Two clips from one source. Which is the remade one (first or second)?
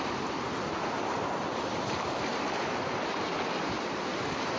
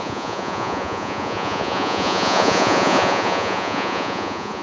second